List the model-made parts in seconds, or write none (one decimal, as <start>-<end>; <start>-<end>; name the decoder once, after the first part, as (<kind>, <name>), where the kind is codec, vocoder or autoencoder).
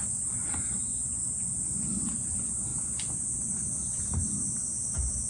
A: none